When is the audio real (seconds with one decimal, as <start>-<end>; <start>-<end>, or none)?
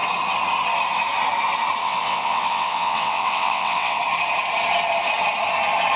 0.0-1.8; 4.0-6.0